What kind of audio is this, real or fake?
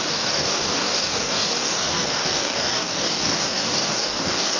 fake